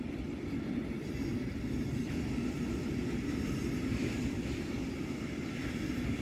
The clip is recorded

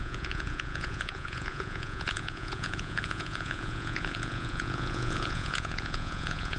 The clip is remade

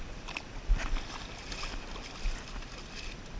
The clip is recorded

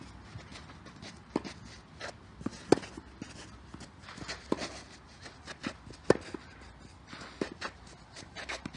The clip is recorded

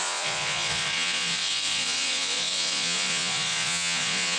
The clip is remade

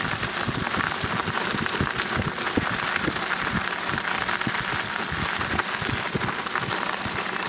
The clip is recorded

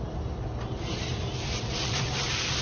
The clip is recorded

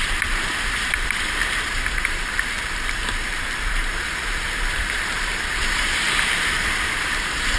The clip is remade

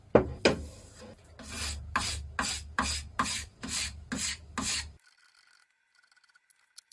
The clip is recorded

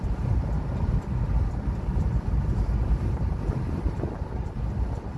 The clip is recorded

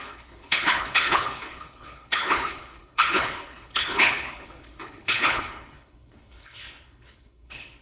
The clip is remade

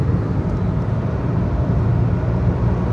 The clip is recorded